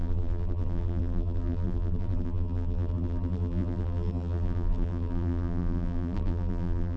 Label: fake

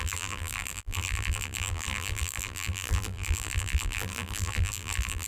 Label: fake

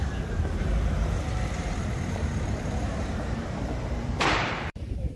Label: fake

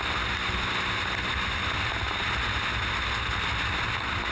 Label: real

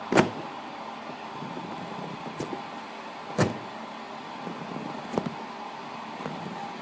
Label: real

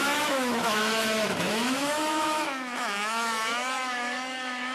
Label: fake